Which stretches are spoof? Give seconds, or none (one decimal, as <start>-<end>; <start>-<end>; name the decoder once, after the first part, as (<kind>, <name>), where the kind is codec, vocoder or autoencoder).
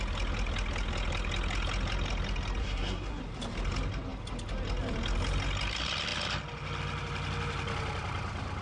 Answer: 2.6-3.2 (codec, SNAC)